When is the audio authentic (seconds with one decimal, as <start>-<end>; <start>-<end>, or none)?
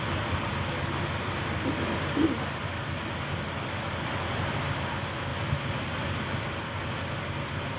0.0-7.8